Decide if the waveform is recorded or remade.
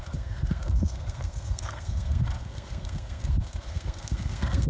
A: remade